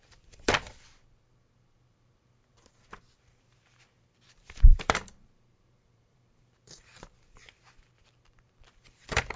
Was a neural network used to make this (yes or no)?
yes